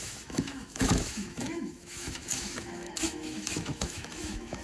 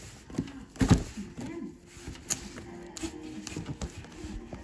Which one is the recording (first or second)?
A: second